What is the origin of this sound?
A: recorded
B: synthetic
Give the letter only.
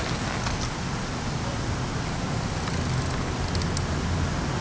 A